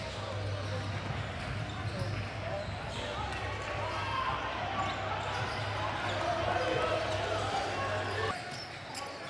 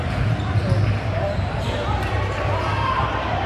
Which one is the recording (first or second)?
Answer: first